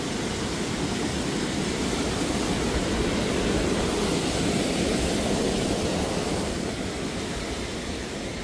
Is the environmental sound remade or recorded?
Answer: recorded